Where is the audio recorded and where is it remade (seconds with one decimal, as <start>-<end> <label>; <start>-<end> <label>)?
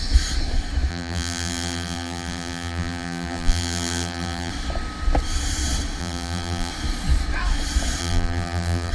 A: 0.0-0.9 recorded; 0.9-4.5 remade; 4.5-6.0 recorded; 6.0-6.7 remade; 6.7-8.0 recorded; 8.0-8.9 remade